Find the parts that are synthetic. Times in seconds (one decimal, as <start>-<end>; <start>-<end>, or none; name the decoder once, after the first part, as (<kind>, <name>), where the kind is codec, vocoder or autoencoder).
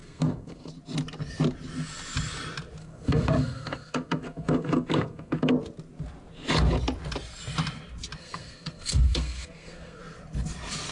0.0-0.7 (codec, SNAC); 2.8-5.5; 8.2-10.0